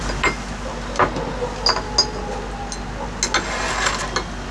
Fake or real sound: real